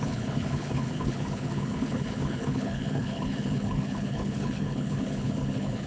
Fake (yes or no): yes